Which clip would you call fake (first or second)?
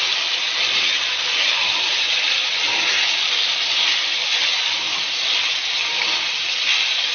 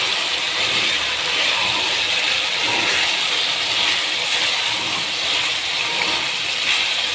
second